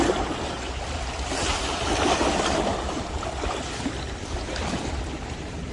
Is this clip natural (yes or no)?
no